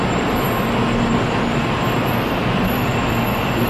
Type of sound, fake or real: real